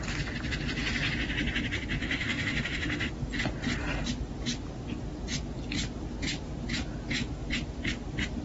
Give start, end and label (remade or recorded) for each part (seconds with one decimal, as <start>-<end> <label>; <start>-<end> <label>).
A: 0.0-2.0 recorded; 2.0-3.1 remade; 3.1-8.4 recorded